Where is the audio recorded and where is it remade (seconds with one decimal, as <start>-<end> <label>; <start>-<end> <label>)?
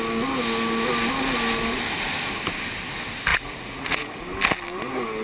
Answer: 0.0-3.3 recorded; 3.3-4.1 remade; 4.1-5.2 recorded